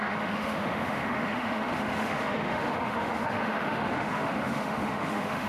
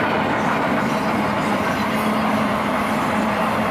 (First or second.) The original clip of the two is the second